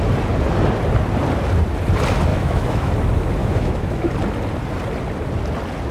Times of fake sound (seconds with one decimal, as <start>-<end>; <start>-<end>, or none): 2.3-2.9; 3.4-4.1